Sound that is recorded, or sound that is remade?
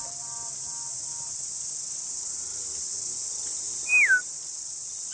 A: recorded